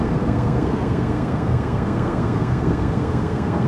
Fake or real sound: fake